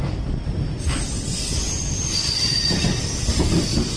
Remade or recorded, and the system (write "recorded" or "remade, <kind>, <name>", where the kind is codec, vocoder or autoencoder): recorded